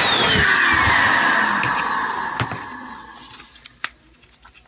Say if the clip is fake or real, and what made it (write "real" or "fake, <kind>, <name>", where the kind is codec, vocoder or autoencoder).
real